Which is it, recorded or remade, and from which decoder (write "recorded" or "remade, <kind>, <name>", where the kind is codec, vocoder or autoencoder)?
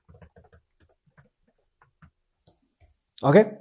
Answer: recorded